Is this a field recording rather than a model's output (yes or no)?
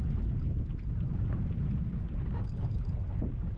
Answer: yes